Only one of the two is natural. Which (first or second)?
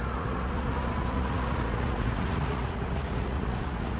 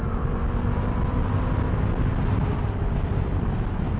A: second